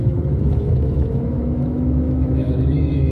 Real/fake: fake